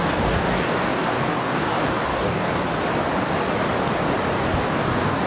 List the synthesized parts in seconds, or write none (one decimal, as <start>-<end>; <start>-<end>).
0.0-2.5; 4.7-5.3